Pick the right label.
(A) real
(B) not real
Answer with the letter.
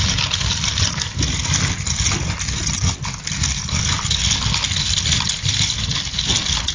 A